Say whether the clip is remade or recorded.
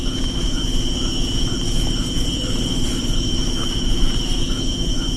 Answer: remade